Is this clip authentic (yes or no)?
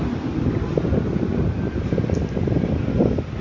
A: yes